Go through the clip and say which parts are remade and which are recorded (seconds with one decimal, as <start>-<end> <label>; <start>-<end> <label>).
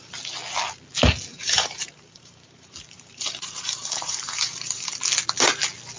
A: 0.0-1.3 recorded; 1.3-4.9 remade; 4.9-6.0 recorded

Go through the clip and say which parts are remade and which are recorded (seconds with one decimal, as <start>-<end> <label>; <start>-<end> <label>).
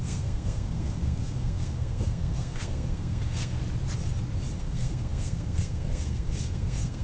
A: 0.0-3.6 remade; 3.6-4.6 recorded; 4.6-7.0 remade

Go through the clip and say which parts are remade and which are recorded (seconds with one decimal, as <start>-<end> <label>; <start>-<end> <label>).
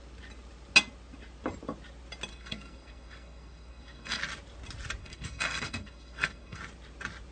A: 0.0-2.3 recorded; 2.3-4.2 remade; 4.2-5.0 recorded; 5.0-6.6 remade; 6.6-7.3 recorded